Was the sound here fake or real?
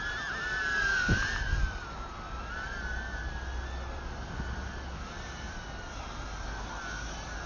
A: real